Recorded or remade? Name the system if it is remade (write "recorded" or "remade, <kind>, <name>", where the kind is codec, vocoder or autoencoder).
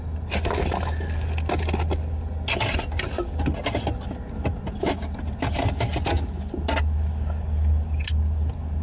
recorded